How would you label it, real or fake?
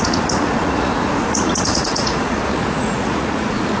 fake